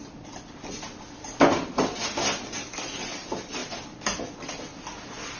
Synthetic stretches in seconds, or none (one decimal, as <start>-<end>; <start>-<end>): none